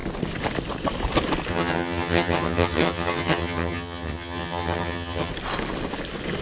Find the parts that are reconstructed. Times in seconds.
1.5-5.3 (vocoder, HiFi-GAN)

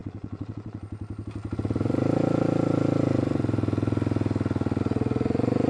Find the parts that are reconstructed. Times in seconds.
0.0-0.8 (vocoder, Vocos)

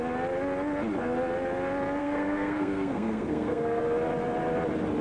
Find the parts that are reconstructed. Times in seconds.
2.0-3.8 (codec, SNAC)

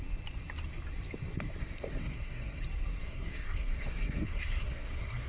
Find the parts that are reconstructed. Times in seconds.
1.6-2.6 (codec, SNAC); 3.0-5.3

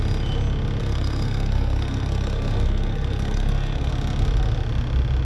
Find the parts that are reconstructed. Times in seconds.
0.8-3.9 (codec, SNAC)

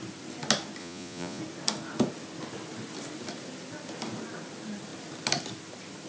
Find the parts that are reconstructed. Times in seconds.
0.8-1.4 (vocoder, Vocos)

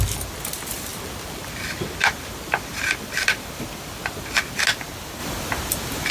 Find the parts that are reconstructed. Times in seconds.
0.9-4.6 (vocoder, BigVGAN v2)

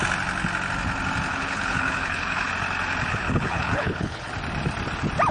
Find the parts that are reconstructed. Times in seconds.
1.3-2.5 (codec, HILCodec); 3.1-4.3